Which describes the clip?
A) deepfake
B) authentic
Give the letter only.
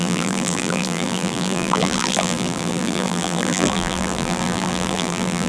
A